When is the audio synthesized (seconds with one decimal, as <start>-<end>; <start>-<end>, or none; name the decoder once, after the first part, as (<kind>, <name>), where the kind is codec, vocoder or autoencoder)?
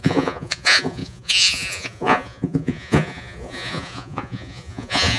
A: 0.0-5.2 (vocoder, Vocos)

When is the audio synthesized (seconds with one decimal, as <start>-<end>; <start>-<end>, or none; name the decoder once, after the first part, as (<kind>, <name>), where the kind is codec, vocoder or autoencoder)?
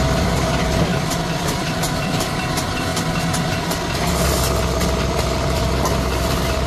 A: 0.0-2.9 (vocoder, BigVGAN v2); 4.1-6.7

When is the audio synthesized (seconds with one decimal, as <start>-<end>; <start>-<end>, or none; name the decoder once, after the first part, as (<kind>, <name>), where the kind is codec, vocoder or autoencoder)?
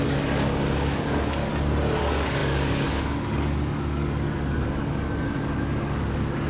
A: 0.0-1.5 (codec, DAC); 2.0-6.5